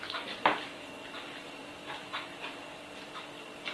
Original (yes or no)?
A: yes